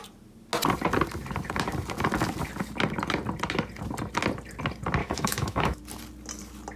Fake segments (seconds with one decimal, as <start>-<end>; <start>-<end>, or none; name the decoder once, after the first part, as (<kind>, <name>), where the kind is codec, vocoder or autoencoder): 5.0-5.8 (autoencoder, DAC-VAE)